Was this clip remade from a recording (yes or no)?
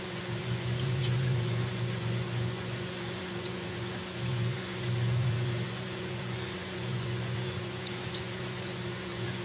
yes